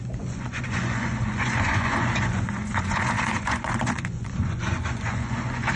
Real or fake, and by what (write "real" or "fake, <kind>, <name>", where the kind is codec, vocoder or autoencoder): fake, vocoder, Vocos